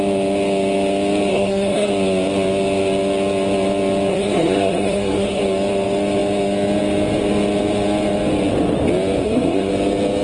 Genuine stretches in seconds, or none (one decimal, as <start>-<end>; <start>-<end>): 0.0-1.3; 1.9-4.1; 5.4-9.2; 9.7-10.2